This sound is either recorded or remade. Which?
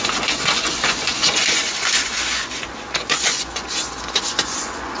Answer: remade